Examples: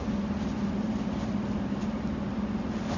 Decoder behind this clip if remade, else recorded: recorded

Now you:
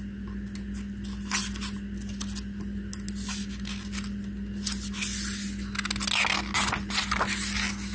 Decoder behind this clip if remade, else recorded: recorded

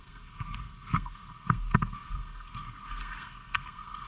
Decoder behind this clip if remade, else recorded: remade, codec, SNAC